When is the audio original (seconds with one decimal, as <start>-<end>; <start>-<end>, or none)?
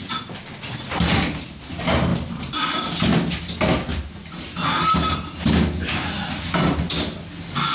0.0-2.1; 2.7-3.9; 5.3-7.7